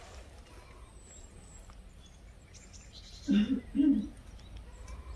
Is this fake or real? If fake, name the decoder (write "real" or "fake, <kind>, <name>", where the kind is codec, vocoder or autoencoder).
real